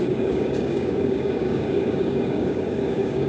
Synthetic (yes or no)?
yes